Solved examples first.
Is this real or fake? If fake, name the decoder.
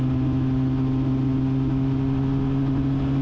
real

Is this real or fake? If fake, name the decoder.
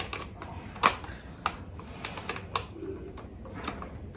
real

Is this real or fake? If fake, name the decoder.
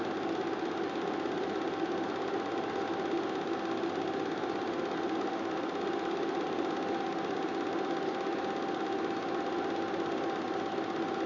real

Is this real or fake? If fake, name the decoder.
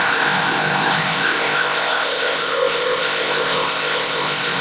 fake, codec, ZipCodec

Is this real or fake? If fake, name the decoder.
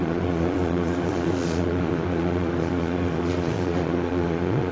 fake, vocoder, Vocos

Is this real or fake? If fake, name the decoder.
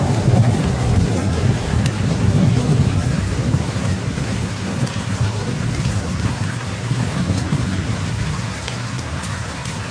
fake, codec, SNAC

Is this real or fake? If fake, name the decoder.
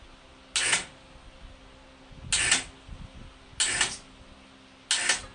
real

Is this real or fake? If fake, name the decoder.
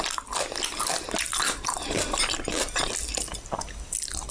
real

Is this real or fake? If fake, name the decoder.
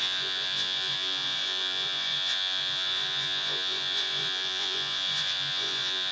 fake, vocoder, Vocos